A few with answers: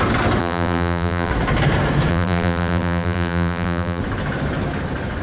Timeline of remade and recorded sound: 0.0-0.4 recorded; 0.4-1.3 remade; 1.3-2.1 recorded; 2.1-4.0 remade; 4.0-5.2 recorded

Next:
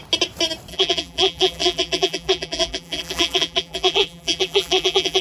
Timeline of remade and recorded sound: 0.0-0.7 recorded; 0.7-5.2 remade

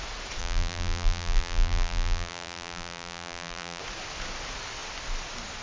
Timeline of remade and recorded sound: 0.0-0.4 recorded; 0.4-3.8 remade; 3.8-5.6 recorded

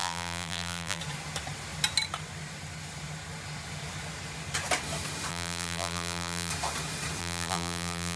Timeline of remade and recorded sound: 0.0-1.0 remade; 1.0-5.3 recorded; 5.3-6.5 remade; 6.5-7.2 recorded; 7.2-8.2 remade

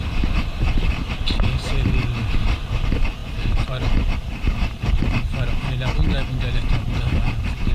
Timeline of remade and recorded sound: 0.0-3.2 recorded; 3.2-4.9 remade; 4.9-7.7 recorded